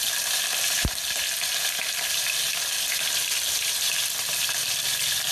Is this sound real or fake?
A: fake